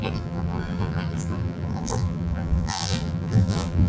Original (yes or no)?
no